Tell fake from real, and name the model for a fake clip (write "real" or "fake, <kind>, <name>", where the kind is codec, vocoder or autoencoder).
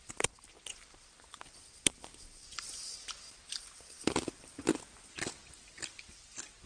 real